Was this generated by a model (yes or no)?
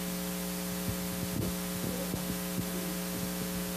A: no